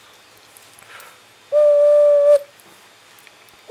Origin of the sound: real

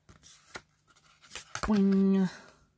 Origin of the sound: real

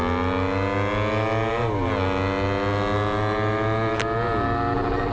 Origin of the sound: real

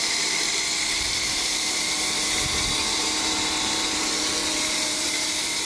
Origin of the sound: fake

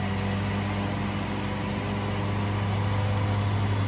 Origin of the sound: real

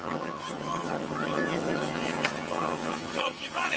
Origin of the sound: fake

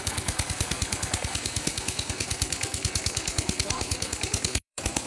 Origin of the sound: fake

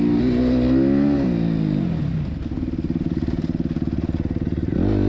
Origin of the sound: real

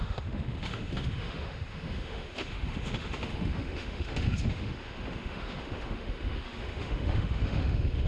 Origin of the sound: fake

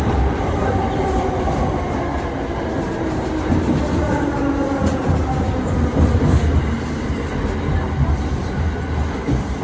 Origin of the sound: real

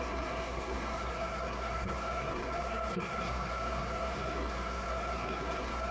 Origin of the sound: fake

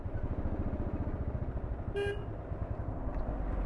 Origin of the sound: real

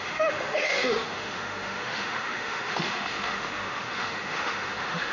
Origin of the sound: fake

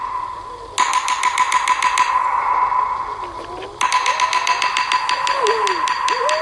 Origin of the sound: real